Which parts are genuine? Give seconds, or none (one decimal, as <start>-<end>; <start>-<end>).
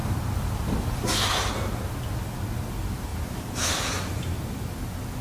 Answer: 1.5-5.2